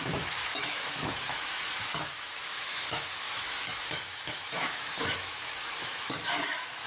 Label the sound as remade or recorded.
remade